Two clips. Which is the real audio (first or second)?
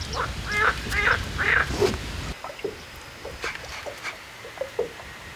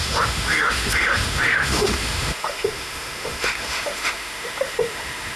first